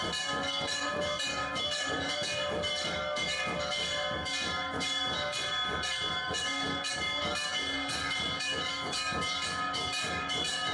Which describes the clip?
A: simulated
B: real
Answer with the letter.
A